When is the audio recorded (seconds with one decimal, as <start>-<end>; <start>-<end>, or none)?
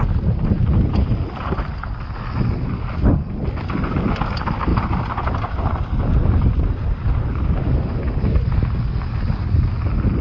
0.0-10.2